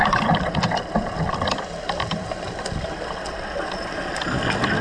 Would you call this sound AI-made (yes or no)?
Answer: no